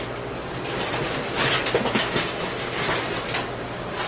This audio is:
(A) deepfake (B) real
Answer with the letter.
B